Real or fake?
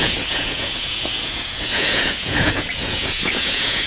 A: fake